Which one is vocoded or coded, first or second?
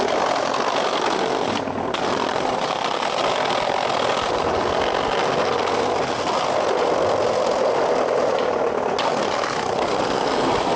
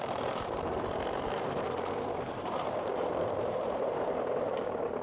second